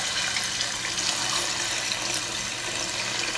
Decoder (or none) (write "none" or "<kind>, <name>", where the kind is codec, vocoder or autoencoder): none